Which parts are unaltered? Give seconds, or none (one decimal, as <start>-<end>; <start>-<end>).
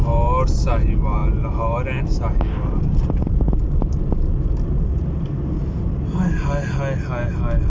0.0-7.7